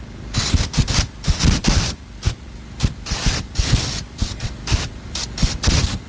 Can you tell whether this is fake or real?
real